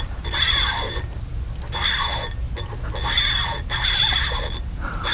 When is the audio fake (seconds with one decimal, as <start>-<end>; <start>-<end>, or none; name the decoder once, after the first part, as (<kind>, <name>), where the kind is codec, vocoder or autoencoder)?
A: 0.0-1.3 (vocoder, BigVGAN v2); 4.4-5.1